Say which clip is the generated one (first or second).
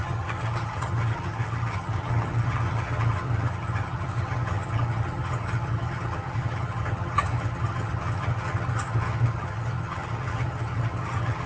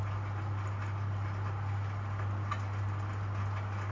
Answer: first